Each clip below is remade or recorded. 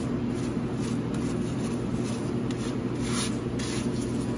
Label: recorded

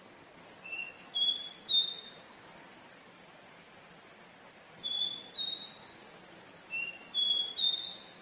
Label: recorded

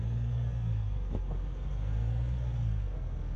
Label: remade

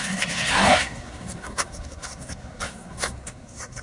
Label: remade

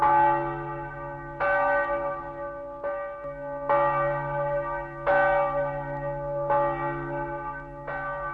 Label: recorded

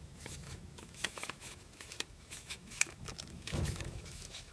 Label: remade